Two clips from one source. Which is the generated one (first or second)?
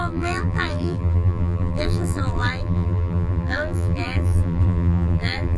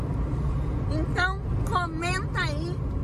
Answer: first